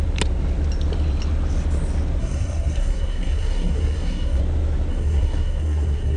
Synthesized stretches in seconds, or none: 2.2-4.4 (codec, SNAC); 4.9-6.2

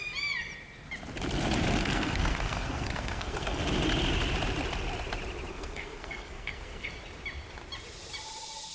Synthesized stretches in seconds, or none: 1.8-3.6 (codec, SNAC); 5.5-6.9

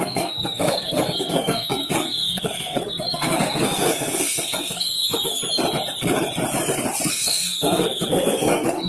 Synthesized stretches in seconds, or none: 0.0-5.4 (codec, SNAC); 7.1-8.9

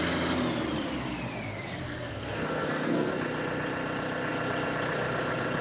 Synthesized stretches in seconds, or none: 1.7-3.1 (codec, SNAC)

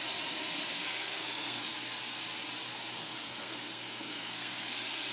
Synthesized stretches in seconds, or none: 0.7-1.7 (codec, SNAC); 3.0-5.1

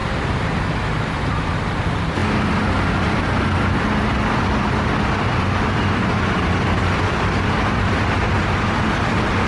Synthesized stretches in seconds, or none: none

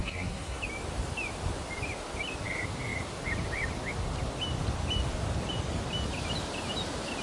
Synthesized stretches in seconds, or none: 0.0-0.6 (codec, SNAC)

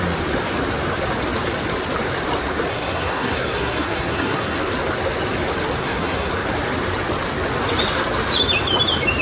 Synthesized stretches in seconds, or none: 2.7-4.6 (codec, SNAC); 5.8-6.3